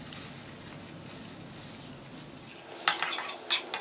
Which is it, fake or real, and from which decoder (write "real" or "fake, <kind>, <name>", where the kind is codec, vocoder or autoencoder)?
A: real